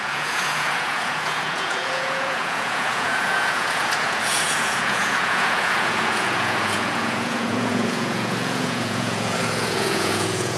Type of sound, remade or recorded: remade